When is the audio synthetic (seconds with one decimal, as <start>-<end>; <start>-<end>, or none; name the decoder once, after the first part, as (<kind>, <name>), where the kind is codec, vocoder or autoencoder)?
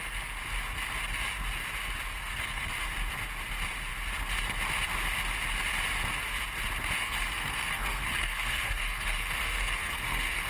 2.2-2.7 (codec, SNAC); 7.0-10.5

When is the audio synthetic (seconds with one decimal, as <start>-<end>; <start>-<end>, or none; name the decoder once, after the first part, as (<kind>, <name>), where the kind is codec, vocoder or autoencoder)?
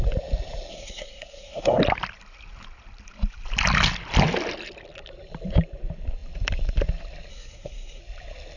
0.7-1.8 (codec, SNAC); 7.3-8.0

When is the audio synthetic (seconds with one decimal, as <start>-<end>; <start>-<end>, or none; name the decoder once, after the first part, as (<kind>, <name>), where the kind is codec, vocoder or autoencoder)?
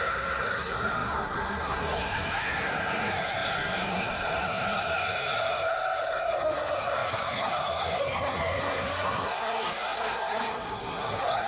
0.0-11.5 (codec, SNAC)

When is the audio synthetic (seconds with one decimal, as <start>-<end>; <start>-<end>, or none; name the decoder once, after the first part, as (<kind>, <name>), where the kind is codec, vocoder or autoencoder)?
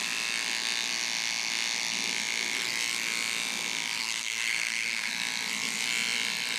4.0-5.1 (codec, SNAC)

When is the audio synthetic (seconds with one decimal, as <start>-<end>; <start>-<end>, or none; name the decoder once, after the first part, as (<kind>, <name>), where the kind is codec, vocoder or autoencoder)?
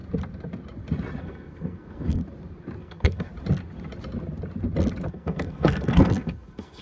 1.2-2.2 (codec, SNAC); 2.8-3.3; 5.1-6.8